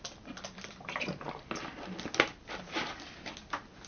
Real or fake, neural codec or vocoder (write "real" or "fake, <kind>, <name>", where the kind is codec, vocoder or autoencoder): real